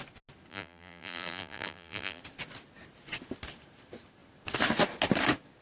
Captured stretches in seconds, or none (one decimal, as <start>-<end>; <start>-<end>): 0.0-0.5; 2.2-5.6